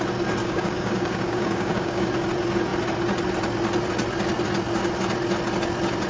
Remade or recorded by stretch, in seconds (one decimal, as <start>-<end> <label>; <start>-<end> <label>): 0.0-0.4 recorded; 0.4-2.1 remade; 2.1-6.1 recorded